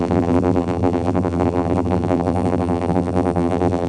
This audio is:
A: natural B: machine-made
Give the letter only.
B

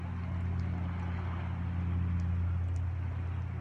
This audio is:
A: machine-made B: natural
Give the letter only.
B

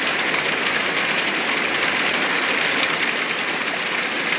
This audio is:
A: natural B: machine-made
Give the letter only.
A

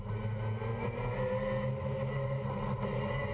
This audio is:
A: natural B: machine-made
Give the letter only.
A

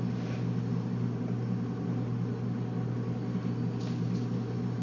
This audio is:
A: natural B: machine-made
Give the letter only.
A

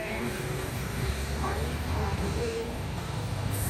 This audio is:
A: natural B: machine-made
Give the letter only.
B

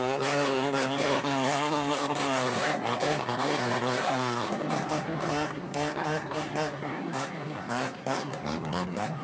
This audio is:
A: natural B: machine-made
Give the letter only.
B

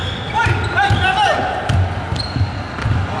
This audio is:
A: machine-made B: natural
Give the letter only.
B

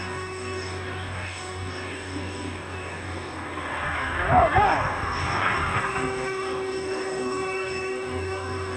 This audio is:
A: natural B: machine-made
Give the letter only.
B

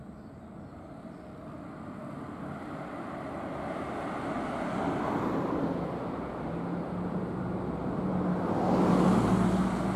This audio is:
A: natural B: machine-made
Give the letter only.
A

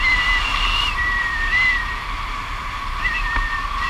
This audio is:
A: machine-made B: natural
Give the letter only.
B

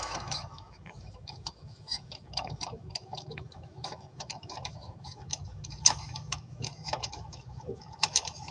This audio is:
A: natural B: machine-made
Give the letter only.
B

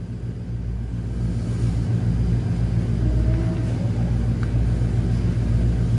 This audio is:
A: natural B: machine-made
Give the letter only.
A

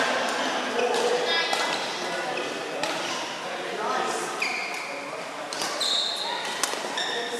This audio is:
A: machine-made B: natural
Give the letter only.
B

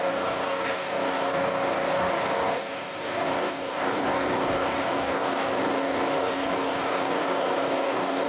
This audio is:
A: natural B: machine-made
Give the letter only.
B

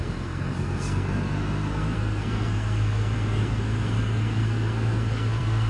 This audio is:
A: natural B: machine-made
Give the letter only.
B